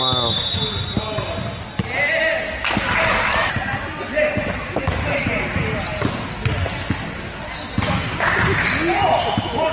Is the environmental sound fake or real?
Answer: real